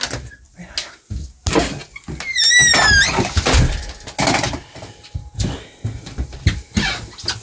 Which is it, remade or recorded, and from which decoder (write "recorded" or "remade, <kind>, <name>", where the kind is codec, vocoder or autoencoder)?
recorded